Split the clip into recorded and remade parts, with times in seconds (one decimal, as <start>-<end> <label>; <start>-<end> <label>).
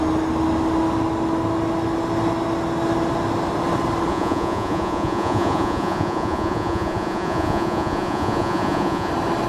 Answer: 0.0-4.1 recorded; 4.1-9.1 remade; 9.1-9.5 recorded